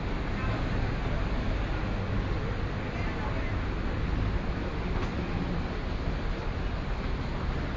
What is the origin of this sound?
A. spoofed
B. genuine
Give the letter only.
B